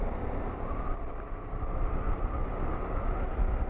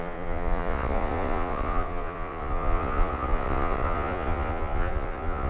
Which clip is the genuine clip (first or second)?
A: first